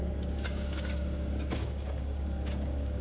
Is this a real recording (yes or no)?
no